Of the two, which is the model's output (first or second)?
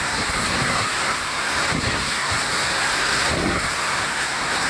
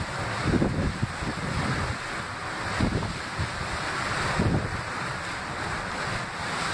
first